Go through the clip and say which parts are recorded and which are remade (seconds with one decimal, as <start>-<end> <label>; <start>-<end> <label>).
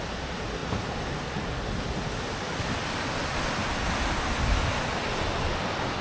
0.0-6.0 recorded